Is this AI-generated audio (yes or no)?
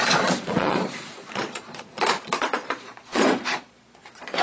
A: yes